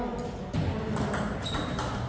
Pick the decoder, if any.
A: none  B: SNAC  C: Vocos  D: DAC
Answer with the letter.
A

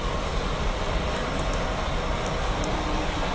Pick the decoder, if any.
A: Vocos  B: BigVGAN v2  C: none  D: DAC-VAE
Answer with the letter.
C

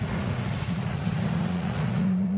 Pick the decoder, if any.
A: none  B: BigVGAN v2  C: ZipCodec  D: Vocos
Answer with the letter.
D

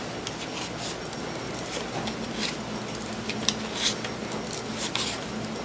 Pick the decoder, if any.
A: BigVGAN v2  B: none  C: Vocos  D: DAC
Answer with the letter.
B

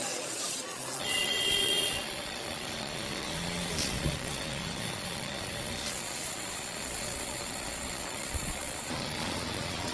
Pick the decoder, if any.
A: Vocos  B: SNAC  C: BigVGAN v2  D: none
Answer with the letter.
A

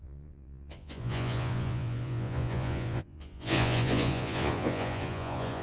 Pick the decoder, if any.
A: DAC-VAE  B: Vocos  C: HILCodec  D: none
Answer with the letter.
B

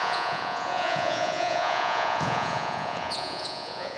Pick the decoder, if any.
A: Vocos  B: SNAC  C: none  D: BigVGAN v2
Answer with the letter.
A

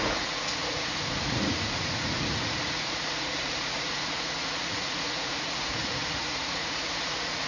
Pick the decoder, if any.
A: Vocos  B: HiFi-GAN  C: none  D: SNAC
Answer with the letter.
A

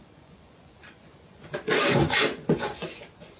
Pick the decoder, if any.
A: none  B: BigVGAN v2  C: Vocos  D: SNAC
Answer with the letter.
C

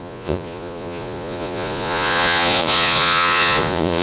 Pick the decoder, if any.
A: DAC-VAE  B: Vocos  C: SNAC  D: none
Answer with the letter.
B